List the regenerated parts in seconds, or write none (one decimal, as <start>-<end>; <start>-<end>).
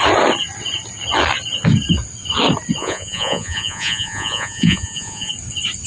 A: 2.8-5.3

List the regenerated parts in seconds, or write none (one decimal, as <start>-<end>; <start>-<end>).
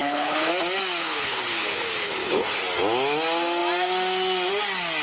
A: 0.0-0.5; 1.0-2.6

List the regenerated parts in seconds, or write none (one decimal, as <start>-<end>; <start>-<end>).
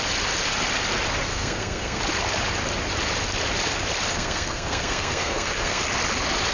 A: 1.3-2.0; 4.1-5.8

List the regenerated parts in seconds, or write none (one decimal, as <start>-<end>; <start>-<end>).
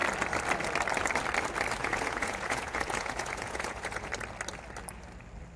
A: 1.8-4.1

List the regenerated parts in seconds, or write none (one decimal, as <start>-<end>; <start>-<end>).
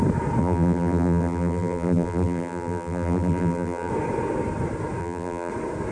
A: 0.4-3.9; 5.0-5.5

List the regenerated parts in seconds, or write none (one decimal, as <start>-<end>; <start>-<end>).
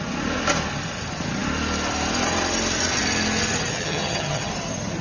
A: 3.7-4.5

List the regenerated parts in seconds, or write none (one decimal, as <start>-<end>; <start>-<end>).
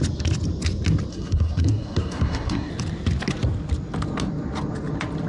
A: 1.1-2.7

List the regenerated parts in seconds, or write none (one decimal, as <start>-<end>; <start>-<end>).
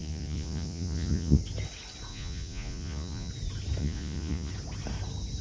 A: 0.0-1.4; 2.1-3.3; 3.8-4.5